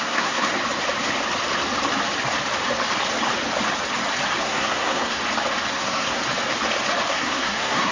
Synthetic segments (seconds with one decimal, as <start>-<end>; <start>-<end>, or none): 0.0-0.5; 4.4-5.2; 5.7-6.2; 7.1-7.9